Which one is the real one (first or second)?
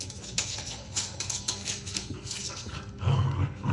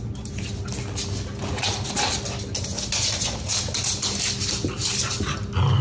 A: second